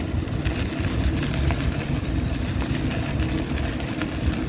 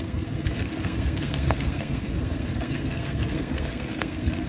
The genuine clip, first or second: first